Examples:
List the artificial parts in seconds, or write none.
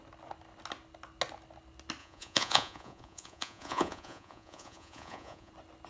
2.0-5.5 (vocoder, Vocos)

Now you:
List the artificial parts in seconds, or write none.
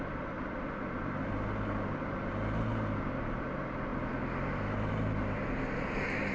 none